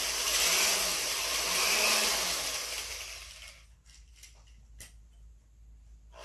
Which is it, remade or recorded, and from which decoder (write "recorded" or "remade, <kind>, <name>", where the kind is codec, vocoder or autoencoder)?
recorded